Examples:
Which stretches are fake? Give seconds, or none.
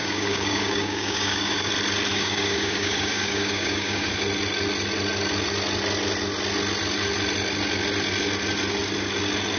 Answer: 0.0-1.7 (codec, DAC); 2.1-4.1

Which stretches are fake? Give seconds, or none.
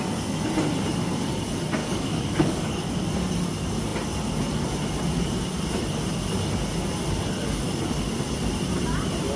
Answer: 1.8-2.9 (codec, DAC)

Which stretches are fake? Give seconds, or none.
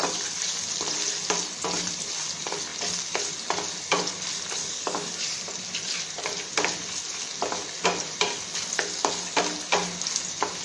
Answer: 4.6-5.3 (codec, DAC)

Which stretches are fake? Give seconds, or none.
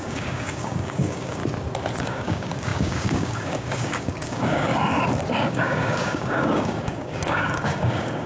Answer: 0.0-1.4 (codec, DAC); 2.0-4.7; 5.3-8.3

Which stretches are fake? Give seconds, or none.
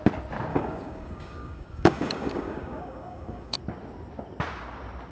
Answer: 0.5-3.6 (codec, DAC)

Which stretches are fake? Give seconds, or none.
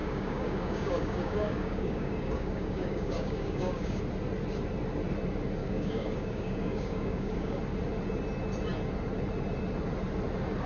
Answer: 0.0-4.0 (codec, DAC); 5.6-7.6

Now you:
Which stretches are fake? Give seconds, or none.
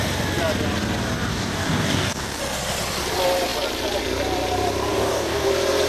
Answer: 1.3-2.4 (codec, DAC); 4.9-5.5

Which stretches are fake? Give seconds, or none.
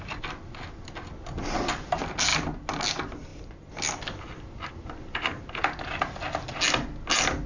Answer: none